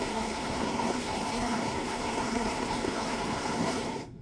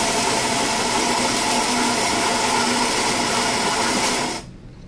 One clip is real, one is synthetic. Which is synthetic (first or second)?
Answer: first